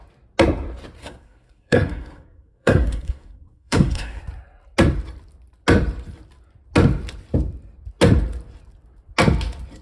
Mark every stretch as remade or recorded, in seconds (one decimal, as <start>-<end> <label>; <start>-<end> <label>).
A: 0.0-1.0 recorded; 1.0-4.2 remade; 4.2-9.8 recorded